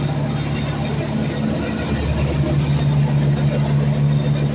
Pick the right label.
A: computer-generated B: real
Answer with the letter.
B